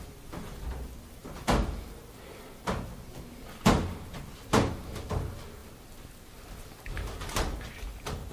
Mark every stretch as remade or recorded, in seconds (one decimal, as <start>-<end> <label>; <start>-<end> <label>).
0.0-8.3 recorded